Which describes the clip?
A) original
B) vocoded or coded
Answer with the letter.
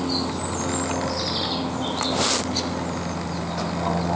A